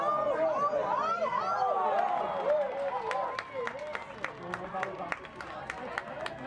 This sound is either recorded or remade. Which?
recorded